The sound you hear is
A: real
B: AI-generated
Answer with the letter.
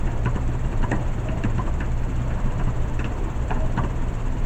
B